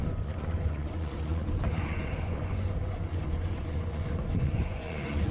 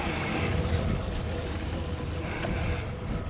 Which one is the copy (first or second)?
first